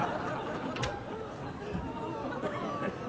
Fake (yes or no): no